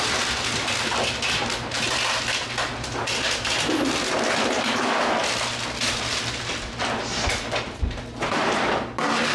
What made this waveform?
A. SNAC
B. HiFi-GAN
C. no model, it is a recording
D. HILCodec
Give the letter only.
C